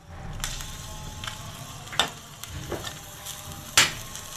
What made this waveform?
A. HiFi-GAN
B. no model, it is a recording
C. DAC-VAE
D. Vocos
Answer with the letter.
B